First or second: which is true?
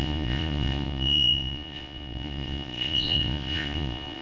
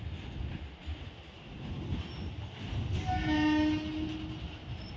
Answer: second